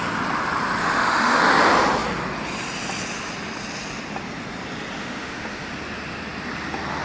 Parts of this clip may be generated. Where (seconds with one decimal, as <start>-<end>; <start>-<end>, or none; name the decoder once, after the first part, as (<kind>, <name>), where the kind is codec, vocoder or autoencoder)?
0.8-1.4 (autoencoder, DAC-VAE); 5.0-5.7